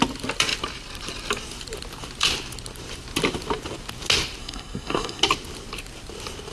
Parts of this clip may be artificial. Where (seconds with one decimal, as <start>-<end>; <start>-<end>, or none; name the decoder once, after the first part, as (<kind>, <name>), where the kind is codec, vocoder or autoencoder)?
4.4-5.2 (codec, SNAC)